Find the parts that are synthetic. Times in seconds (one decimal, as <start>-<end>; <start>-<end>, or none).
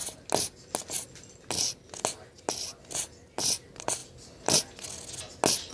none